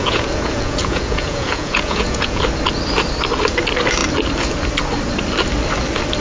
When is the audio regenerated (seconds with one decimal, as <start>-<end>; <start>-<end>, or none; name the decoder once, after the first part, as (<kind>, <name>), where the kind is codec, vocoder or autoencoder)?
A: 0.0-2.4 (vocoder, Vocos)